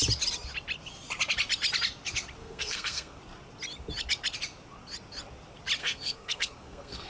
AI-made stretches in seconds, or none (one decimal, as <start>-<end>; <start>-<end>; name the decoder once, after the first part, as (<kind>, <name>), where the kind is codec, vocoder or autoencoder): 2.4-3.2 (codec, SNAC); 5.8-7.1